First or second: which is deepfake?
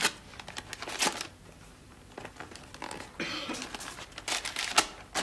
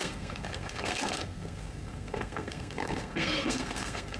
second